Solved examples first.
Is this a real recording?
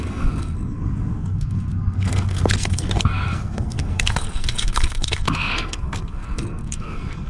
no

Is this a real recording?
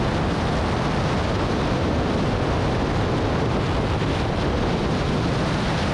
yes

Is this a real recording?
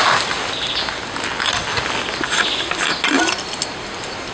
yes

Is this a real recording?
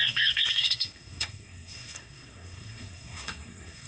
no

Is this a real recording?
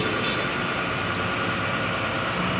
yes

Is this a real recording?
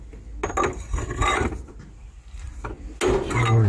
yes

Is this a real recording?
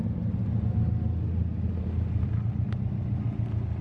yes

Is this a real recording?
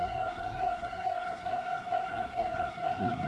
no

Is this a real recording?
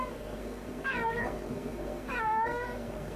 no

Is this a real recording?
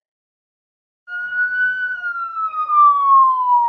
no